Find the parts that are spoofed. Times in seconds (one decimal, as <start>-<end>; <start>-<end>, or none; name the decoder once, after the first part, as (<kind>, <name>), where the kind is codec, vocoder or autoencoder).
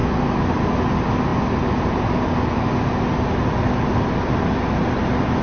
none